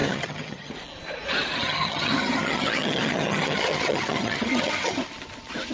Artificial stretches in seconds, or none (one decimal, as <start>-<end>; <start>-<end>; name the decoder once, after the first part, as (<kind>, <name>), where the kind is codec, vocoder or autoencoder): 0.0-0.7 (vocoder, HiFi-GAN); 1.6-5.0